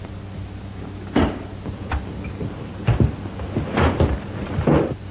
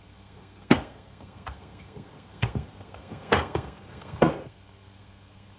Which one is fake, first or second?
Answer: second